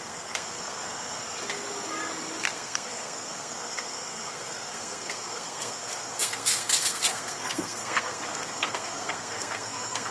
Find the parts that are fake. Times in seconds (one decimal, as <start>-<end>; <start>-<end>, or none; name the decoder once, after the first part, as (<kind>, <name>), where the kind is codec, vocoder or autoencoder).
0.0-1.2 (codec, SNAC); 2.4-10.1